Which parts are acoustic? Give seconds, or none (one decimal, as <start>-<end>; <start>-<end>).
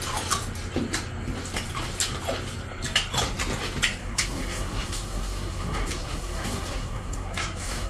0.0-4.0